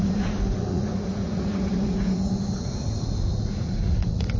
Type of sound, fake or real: fake